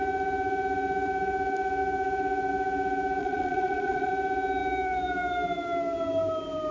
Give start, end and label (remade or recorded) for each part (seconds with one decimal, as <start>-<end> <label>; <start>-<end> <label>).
0.0-3.2 recorded; 3.2-4.1 remade; 4.1-6.7 recorded